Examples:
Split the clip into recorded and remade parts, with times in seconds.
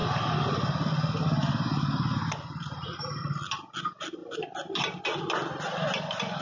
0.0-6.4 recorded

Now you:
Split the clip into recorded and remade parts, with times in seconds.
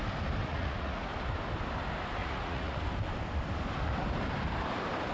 0.0-0.4 recorded; 0.4-1.1 remade; 1.1-2.2 recorded; 2.2-2.8 remade; 2.8-5.1 recorded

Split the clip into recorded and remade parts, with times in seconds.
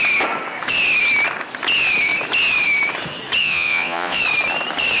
0.0-3.4 recorded; 3.4-4.2 remade; 4.2-5.0 recorded